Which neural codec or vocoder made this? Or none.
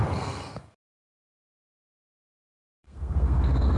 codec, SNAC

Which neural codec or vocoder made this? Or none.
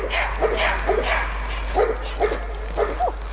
none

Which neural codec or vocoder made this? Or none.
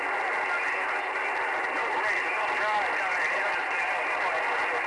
none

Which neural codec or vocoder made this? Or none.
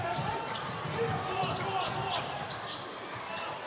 none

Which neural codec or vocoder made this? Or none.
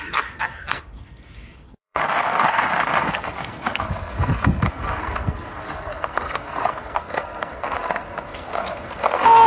codec, SNAC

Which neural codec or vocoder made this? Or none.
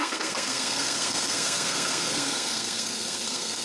codec, SNAC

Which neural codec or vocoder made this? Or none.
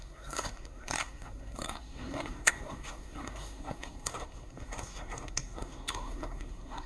codec, SNAC